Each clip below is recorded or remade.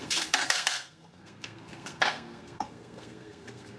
remade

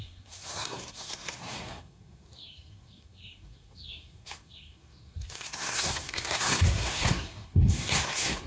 remade